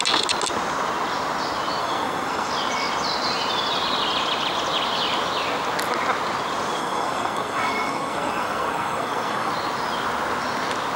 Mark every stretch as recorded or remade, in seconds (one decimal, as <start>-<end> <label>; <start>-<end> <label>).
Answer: 0.0-1.8 recorded; 1.8-2.5 remade; 2.5-6.8 recorded; 6.8-9.5 remade; 9.5-11.0 recorded